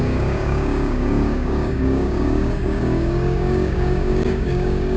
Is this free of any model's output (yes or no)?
no